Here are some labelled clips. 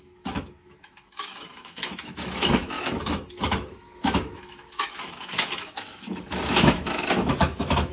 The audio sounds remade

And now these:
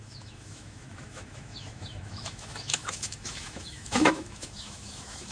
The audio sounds remade